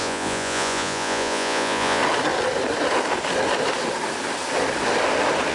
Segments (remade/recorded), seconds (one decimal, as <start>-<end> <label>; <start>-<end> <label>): 0.0-2.0 remade; 2.0-5.5 recorded